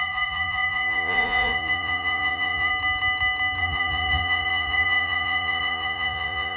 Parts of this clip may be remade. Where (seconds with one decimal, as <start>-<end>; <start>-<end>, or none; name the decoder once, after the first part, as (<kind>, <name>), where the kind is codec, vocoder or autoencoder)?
0.0-2.7 (vocoder, Vocos); 3.6-6.6